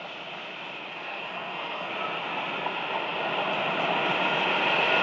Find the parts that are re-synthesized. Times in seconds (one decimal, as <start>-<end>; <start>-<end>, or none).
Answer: 0.9-1.9